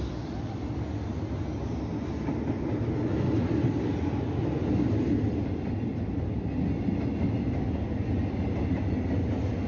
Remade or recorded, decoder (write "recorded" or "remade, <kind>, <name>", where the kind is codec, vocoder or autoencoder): recorded